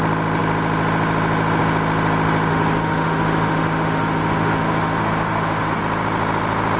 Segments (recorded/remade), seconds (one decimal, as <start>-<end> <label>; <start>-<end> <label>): 0.0-2.5 recorded; 2.5-5.8 remade; 5.8-6.8 recorded